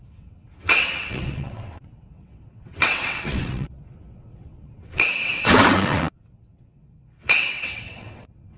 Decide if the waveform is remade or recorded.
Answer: remade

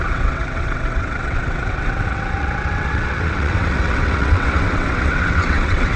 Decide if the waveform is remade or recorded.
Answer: remade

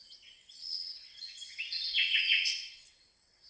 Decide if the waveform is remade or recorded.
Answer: remade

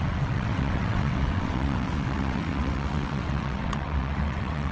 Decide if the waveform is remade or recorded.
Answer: remade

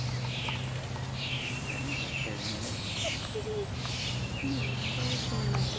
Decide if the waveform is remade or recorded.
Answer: recorded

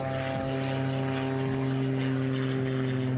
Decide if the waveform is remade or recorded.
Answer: recorded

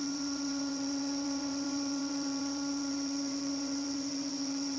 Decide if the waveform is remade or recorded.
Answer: remade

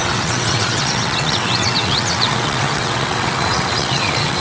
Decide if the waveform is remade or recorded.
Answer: remade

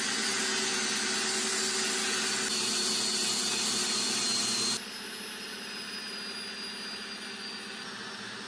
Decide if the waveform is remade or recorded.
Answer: recorded